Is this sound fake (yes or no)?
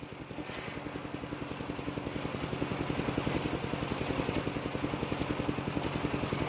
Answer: no